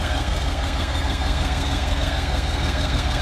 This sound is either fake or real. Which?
fake